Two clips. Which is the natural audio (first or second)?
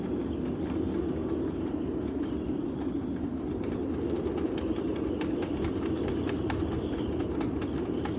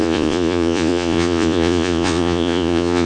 first